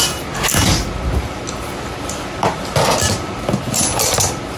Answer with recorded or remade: recorded